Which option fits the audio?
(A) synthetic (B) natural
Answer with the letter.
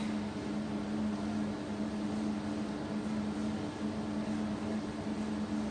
B